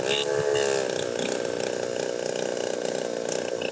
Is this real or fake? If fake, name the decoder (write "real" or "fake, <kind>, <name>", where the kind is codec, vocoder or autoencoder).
real